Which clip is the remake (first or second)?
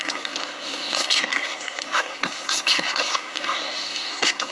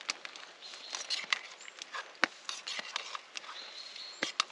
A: first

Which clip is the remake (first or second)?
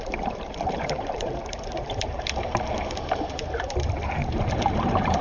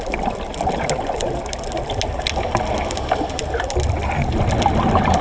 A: first